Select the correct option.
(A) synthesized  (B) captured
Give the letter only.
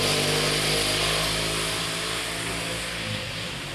B